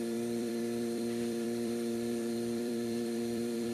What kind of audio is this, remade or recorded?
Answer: remade